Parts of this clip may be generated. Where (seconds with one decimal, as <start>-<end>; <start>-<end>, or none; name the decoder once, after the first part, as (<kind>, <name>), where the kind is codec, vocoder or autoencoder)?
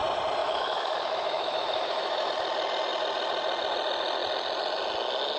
0.4-2.3 (autoencoder, DAC-VAE)